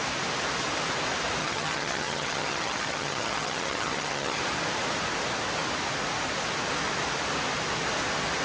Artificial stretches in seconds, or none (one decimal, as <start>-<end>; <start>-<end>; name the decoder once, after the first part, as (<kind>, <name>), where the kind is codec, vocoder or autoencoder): 1.4-4.4 (vocoder, HiFi-GAN)